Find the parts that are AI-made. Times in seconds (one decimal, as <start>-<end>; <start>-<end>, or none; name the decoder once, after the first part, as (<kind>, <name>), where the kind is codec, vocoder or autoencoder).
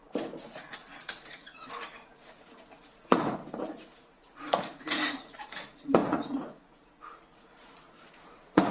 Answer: 0.0-8.7 (vocoder, Vocos)